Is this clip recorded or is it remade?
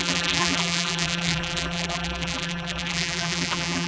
remade